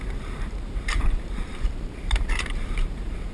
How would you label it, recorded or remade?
remade